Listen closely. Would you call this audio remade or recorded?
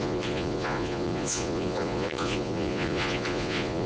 remade